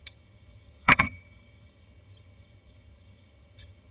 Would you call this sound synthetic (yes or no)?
yes